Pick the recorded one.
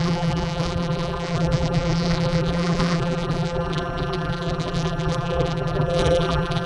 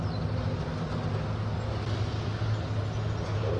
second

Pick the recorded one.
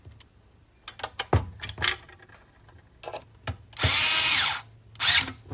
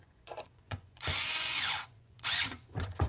first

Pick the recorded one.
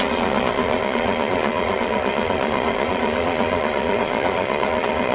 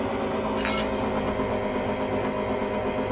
second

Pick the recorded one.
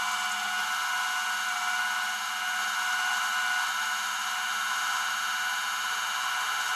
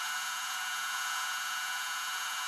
first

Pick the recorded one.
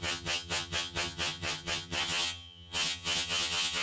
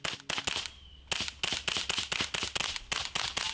second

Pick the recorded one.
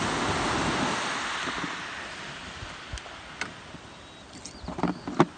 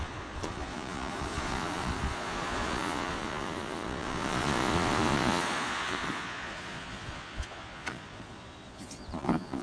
first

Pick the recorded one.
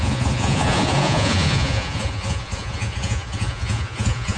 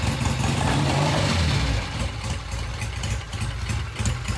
second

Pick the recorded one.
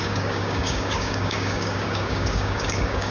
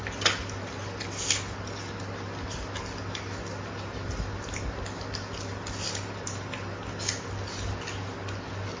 second